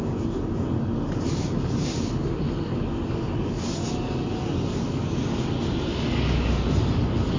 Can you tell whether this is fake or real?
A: real